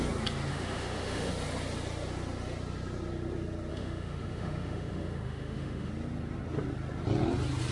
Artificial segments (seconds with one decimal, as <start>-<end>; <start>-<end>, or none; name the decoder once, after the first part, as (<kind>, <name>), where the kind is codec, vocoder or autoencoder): 0.5-1.3 (autoencoder, DAC-VAE); 3.7-5.9